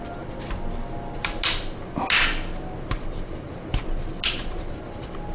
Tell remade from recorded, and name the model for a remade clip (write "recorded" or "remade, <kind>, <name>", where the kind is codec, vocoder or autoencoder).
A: recorded